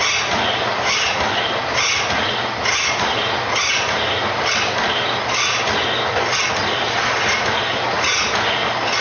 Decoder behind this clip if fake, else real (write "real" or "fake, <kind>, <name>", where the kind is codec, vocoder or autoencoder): real